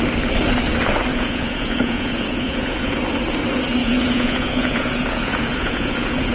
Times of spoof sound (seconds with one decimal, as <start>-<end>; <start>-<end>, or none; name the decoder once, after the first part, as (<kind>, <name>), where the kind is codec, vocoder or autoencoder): 1.1-3.0 (vocoder, Vocos); 3.8-6.3